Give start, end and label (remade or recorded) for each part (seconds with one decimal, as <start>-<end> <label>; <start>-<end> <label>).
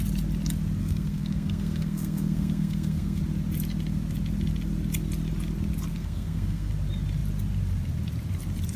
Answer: 0.0-0.8 recorded; 0.8-3.2 remade; 3.2-5.9 recorded; 5.9-6.7 remade; 6.7-8.8 recorded